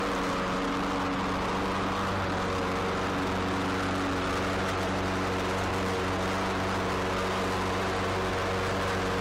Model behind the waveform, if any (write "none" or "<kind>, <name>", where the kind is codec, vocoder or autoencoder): none